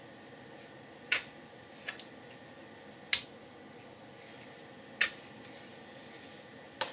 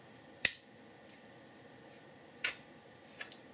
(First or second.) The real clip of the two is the first